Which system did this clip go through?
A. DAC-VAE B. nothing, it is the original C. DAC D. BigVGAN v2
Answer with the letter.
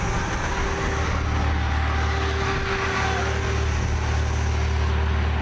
B